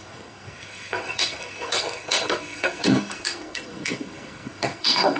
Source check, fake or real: fake